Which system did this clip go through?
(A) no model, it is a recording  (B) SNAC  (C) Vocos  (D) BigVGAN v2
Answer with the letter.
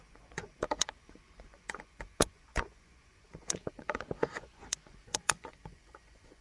C